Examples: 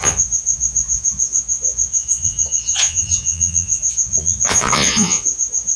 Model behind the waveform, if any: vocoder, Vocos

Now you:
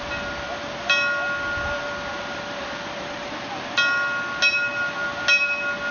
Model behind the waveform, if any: none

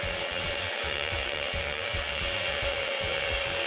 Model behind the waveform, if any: vocoder, WaveNeXt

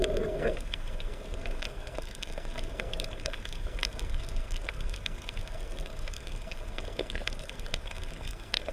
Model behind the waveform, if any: codec, SNAC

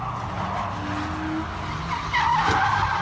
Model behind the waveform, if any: none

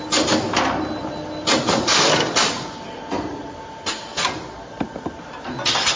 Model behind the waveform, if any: none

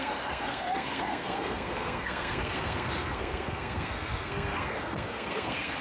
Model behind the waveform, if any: codec, SNAC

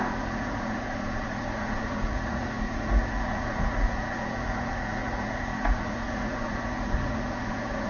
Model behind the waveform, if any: vocoder, Vocos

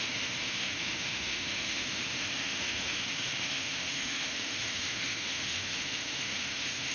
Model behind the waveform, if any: autoencoder, DAC-VAE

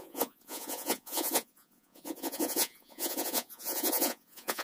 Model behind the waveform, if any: vocoder, Vocos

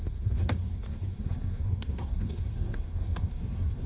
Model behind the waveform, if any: codec, SNAC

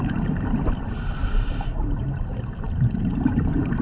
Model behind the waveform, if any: none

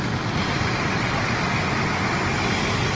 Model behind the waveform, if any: none